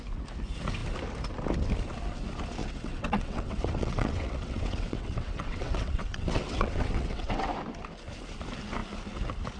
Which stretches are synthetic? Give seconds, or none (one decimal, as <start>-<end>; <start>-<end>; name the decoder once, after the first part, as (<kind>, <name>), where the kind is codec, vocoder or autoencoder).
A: 2.6-7.5 (vocoder, WaveNeXt)